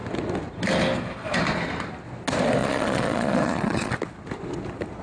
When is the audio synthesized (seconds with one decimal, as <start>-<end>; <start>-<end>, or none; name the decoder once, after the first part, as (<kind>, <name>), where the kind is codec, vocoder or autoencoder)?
2.6-3.9 (vocoder, Vocos)